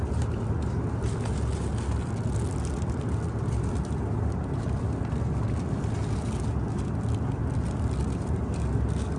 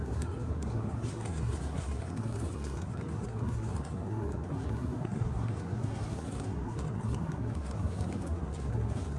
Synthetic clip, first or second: second